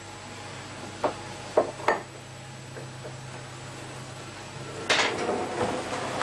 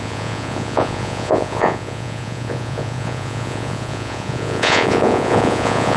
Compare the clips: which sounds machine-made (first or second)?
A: second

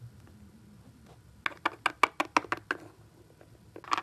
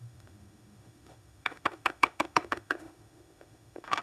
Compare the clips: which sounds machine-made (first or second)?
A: second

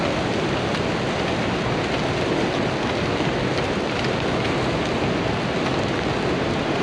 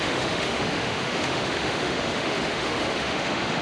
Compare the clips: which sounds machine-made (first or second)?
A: second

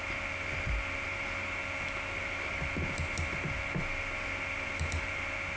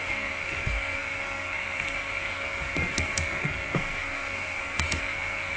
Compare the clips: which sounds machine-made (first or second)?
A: second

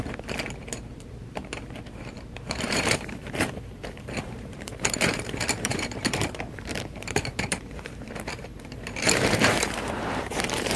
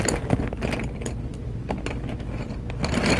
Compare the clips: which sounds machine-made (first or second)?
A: first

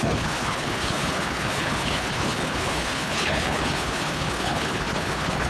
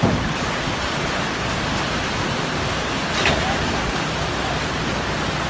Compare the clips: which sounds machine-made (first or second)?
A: first